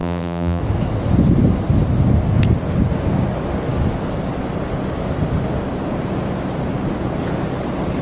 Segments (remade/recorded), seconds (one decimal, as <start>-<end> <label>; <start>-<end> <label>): 0.0-0.6 remade; 0.6-8.0 recorded